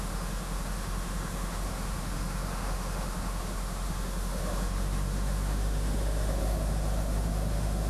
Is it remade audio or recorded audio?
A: remade